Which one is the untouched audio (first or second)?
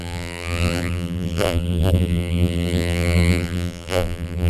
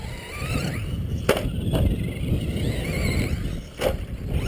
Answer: second